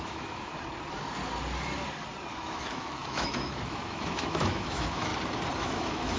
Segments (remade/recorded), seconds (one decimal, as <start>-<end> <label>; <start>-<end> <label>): 0.0-0.5 remade; 0.5-2.3 recorded; 2.3-5.1 remade; 5.1-5.6 recorded; 5.6-6.2 remade